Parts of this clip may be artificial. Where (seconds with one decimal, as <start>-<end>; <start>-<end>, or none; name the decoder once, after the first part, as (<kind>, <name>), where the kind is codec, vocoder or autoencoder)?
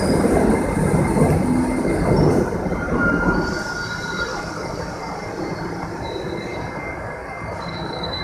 4.3-5.3 (codec, DAC); 6.5-8.2